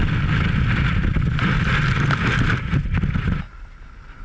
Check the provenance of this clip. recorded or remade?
recorded